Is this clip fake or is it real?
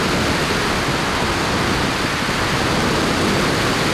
real